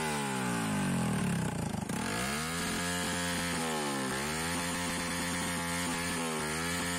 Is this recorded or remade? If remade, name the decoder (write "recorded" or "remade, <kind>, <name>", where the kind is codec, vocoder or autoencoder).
recorded